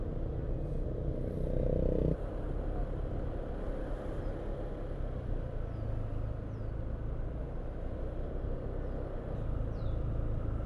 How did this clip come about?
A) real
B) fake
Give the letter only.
A